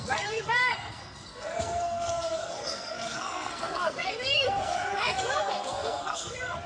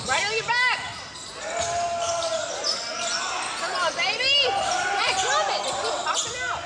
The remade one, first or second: first